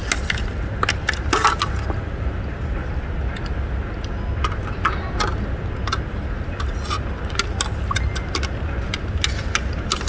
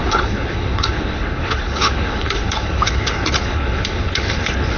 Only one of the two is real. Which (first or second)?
first